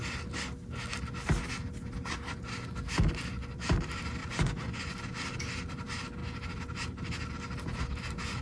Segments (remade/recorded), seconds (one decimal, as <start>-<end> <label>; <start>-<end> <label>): 0.0-4.2 recorded; 4.2-4.8 remade; 4.8-8.4 recorded